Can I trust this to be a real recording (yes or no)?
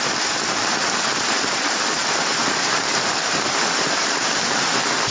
no